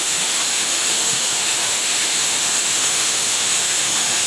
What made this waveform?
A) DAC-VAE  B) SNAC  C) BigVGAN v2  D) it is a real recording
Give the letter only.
A